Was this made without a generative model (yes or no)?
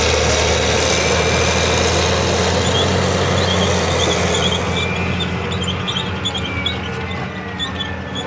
yes